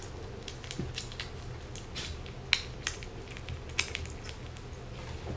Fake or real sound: real